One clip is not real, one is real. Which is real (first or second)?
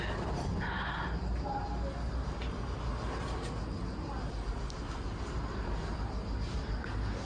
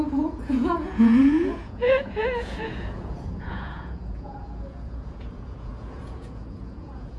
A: first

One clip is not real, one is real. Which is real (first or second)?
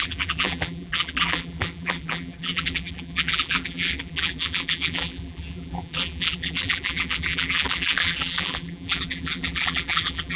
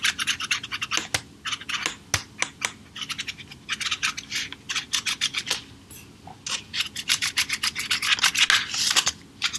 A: second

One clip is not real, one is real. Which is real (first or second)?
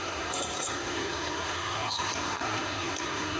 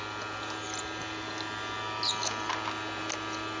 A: second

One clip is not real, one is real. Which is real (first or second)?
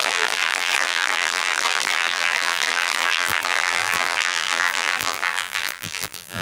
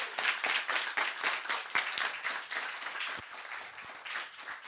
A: second